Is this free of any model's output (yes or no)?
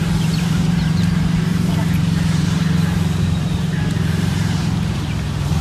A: no